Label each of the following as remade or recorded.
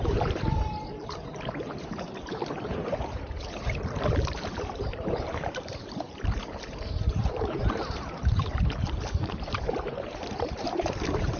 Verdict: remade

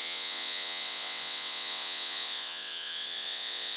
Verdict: remade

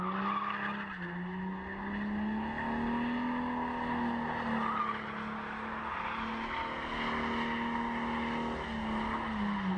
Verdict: recorded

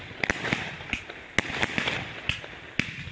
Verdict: recorded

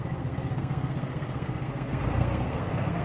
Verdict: remade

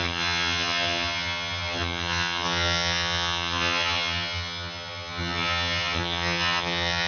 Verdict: remade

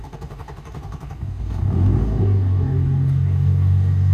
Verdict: remade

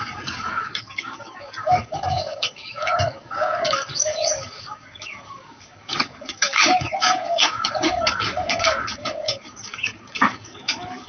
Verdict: remade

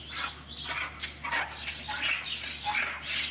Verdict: recorded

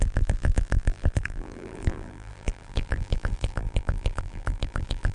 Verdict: remade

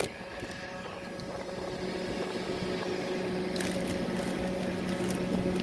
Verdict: recorded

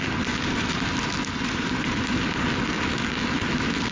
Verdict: recorded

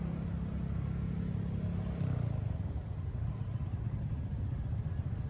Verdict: recorded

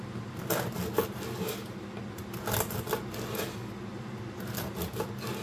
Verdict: recorded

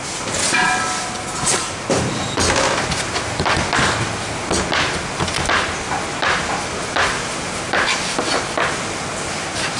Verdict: recorded